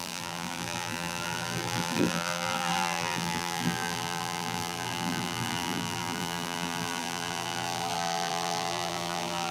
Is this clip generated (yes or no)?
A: yes